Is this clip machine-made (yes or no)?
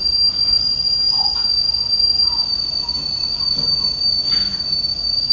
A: no